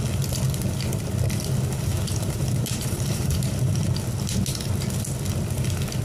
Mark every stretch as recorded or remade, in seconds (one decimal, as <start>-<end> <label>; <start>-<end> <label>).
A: 0.0-1.9 recorded; 1.9-3.9 remade; 3.9-6.0 recorded